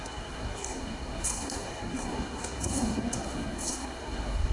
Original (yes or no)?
no